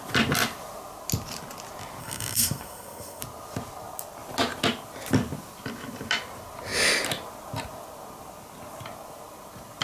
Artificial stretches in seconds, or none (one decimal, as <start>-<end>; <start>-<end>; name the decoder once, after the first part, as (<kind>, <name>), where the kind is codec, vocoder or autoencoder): 2.0-3.2 (codec, SNAC)